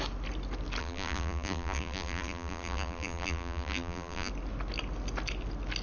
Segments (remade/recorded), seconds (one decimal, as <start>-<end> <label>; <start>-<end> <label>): 0.0-0.8 recorded; 0.8-4.3 remade; 4.3-5.8 recorded